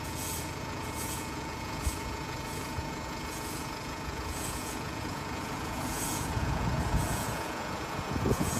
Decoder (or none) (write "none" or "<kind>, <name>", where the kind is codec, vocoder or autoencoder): vocoder, Vocos